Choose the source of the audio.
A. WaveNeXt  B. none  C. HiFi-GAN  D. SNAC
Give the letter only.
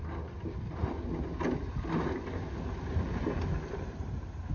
B